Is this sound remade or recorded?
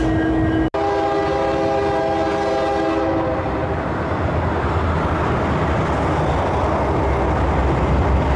recorded